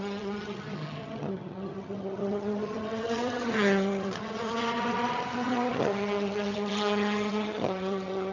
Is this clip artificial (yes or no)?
yes